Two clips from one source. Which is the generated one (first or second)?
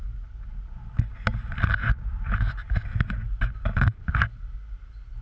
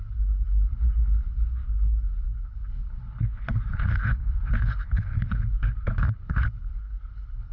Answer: second